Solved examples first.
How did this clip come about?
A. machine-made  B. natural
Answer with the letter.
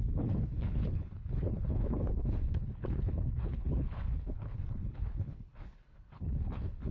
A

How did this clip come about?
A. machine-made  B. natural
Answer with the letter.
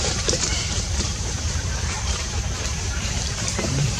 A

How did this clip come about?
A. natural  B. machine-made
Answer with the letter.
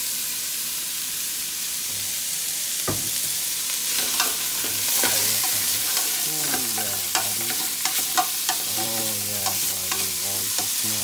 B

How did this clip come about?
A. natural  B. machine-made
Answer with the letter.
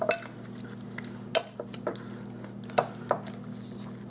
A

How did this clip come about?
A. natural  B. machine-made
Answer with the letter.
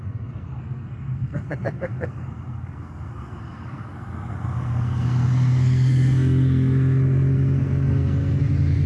B